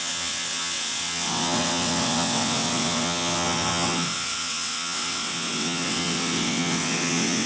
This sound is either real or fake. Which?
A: fake